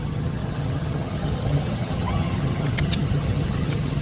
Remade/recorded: remade